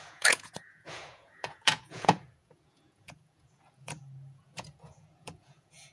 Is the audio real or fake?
fake